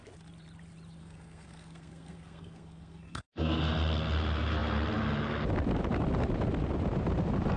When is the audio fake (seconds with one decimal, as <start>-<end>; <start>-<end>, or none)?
1.0-3.6